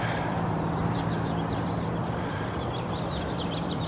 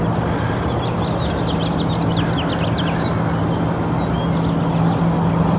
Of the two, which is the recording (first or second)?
second